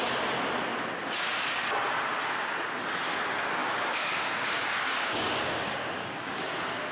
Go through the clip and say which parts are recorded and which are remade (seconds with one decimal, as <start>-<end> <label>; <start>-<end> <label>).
0.0-3.6 recorded; 3.6-6.4 remade; 6.4-6.9 recorded